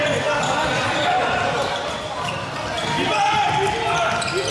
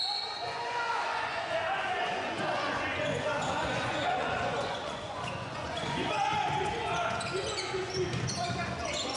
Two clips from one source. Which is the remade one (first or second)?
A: second